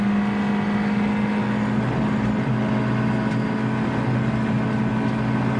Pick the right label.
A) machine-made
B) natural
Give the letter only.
B